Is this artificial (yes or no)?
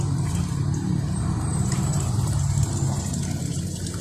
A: yes